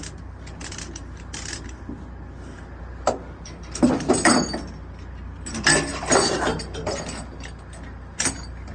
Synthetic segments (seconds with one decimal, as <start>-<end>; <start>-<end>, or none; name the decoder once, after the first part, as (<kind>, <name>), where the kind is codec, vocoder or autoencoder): none

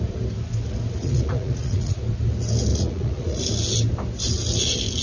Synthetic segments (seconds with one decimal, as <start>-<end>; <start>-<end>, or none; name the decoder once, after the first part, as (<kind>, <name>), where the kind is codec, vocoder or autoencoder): 1.0-2.0 (vocoder, Vocos); 2.7-3.4

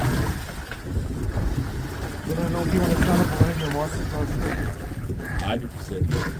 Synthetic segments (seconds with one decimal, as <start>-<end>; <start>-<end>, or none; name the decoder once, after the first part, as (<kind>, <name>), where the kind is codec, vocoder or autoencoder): 4.5-6.4 (vocoder, BigVGAN v2)

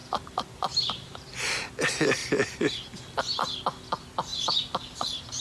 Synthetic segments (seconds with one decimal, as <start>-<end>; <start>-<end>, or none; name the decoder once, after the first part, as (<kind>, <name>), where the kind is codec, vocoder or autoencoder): 0.0-1.4 (vocoder, BigVGAN v2)

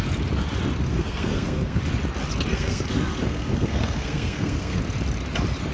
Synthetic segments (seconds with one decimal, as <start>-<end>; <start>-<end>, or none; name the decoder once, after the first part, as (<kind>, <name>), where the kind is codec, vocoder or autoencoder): 0.9-1.8 (codec, SNAC); 2.5-4.8

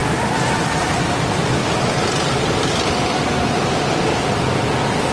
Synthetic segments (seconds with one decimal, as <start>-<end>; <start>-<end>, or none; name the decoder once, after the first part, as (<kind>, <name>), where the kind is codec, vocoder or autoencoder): 0.0-1.4 (vocoder, BigVGAN v2); 2.0-2.9; 3.3-4.0